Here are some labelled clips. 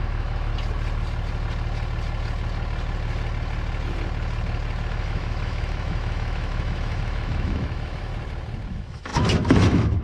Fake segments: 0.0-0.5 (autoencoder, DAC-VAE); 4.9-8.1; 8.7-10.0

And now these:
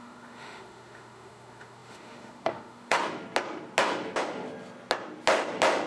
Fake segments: 0.0-3.0 (autoencoder, DAC-VAE)

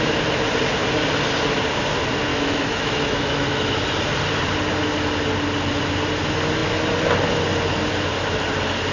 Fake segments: 2.3-3.7 (autoencoder, DAC-VAE)

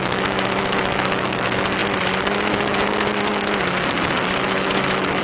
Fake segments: 0.0-5.2 (autoencoder, DAC-VAE)